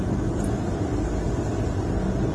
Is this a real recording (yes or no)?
yes